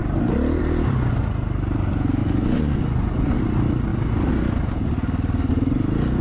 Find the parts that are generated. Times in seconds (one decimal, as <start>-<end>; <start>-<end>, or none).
2.2-3.3